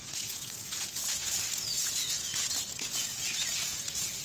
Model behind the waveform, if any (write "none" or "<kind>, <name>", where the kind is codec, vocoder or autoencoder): vocoder, Vocos